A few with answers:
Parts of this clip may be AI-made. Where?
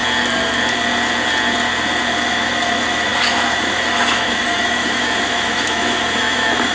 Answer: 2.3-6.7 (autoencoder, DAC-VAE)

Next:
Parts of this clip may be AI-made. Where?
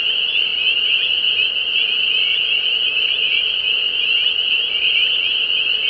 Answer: none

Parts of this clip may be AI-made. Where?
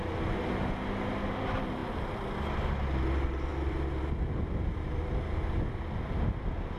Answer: none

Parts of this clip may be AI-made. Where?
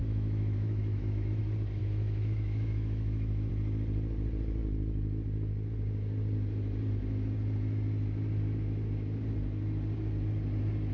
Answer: 0.0-1.4 (autoencoder, DAC-VAE); 1.8-3.5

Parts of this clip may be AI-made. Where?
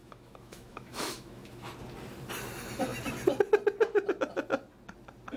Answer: 0.0-1.7 (autoencoder, DAC-VAE)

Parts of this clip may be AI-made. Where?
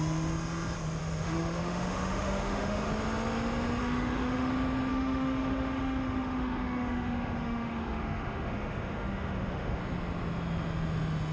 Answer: 1.0-2.9 (autoencoder, DAC-VAE); 3.8-4.5; 4.9-9.8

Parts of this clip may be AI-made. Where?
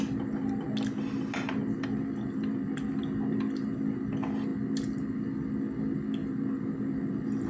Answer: none